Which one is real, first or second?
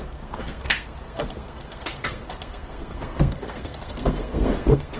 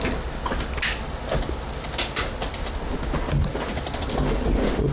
second